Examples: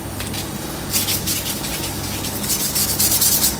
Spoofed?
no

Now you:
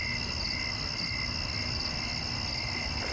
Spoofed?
no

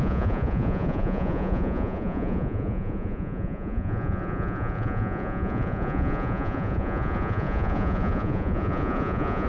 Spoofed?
yes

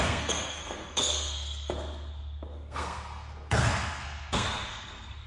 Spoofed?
yes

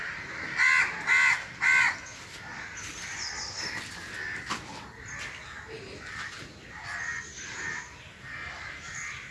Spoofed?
no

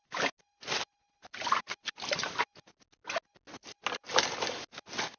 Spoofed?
no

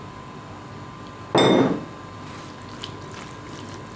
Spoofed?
no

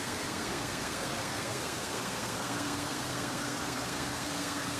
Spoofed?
yes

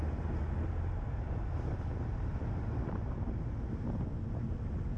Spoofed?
no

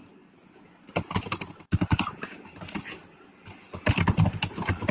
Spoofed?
no